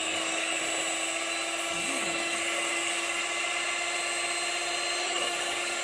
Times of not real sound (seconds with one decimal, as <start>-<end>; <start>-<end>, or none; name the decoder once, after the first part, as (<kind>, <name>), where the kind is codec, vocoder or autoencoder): 0.0-0.6 (codec, DAC); 1.7-3.2; 5.0-5.8